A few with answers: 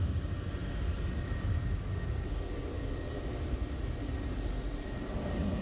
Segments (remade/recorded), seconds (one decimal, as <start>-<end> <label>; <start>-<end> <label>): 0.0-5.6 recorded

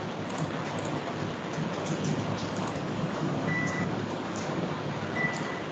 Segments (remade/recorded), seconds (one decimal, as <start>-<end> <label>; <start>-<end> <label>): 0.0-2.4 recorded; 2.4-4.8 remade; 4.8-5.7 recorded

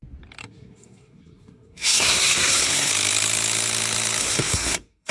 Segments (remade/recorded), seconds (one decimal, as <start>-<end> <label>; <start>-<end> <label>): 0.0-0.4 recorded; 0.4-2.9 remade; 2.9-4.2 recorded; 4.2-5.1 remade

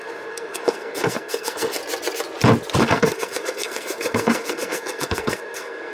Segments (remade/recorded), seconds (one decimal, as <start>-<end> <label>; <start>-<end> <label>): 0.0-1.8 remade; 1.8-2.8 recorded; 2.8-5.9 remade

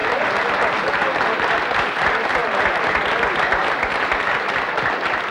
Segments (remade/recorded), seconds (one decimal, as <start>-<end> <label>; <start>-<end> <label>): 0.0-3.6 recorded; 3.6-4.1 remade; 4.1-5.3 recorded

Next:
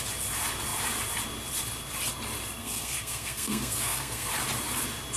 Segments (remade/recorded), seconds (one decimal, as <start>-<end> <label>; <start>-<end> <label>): 0.0-2.6 recorded; 2.6-4.3 remade; 4.3-5.2 recorded